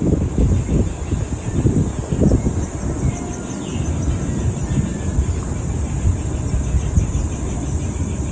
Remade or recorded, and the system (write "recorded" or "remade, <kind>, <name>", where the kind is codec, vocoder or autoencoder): recorded